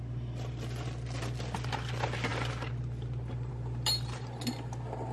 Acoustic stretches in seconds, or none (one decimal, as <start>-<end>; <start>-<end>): 0.0-5.1